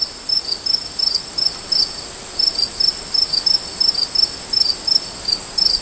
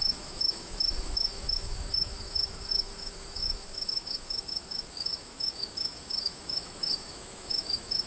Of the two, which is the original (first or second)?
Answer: first